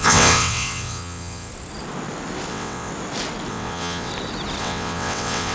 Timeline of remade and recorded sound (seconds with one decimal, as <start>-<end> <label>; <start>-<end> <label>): 0.0-1.5 remade; 1.5-2.5 recorded; 2.5-2.9 remade; 2.9-3.5 recorded; 3.5-4.1 remade; 4.1-4.6 recorded; 4.6-5.5 remade